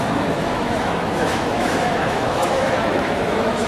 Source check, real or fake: fake